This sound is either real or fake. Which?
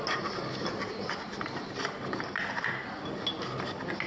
real